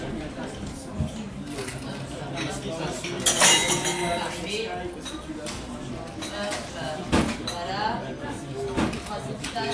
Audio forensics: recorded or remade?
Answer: recorded